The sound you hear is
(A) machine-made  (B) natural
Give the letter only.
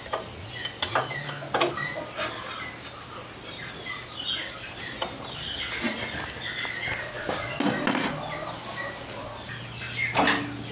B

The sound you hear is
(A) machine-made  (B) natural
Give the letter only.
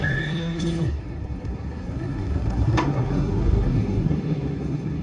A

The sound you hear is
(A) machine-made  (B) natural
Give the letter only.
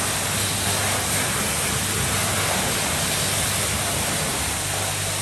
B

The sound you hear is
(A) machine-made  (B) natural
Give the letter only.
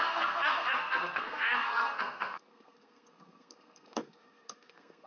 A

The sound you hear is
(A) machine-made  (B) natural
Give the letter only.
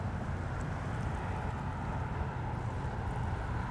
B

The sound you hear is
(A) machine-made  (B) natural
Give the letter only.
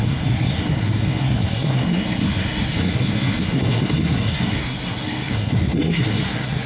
A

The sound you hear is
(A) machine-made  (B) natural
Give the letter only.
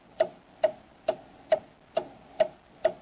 B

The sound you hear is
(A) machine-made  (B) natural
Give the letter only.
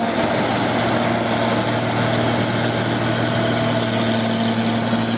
B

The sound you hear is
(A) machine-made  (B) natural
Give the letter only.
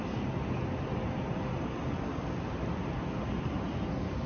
B